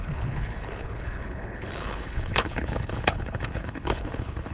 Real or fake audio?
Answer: fake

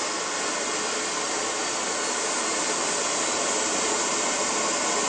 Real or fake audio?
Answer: real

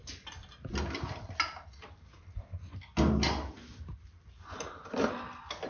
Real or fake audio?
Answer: real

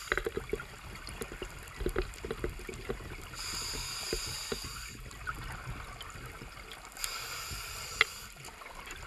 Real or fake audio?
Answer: real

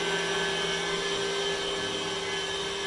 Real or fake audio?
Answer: real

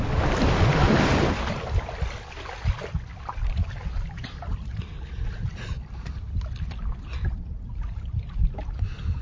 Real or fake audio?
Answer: real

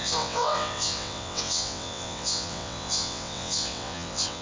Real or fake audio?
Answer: fake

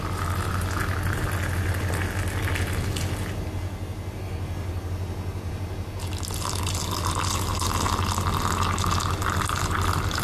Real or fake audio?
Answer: real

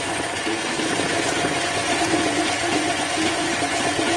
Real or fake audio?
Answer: fake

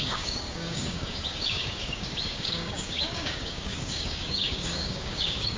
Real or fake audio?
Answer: fake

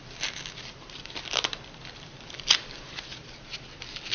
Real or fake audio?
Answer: real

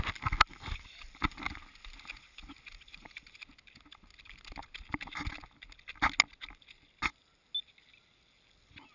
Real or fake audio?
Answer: real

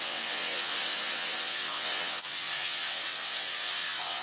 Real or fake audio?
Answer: fake